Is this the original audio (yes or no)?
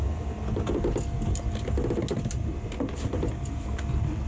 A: yes